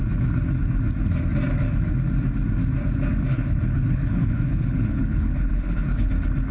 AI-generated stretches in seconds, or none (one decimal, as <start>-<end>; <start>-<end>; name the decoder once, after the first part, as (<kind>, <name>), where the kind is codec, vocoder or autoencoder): 3.3-6.1 (codec, HILCodec)